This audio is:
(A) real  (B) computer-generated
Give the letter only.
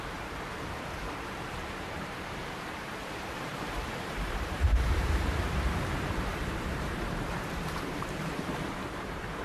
B